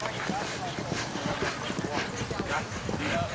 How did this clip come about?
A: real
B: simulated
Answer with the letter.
A